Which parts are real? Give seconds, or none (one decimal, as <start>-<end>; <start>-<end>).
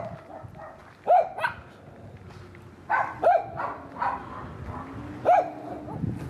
0.0-6.3